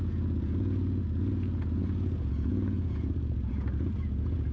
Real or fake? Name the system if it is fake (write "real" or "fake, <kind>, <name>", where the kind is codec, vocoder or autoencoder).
fake, vocoder, Vocos